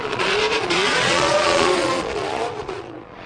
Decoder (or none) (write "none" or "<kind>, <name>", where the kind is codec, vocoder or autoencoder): vocoder, Vocos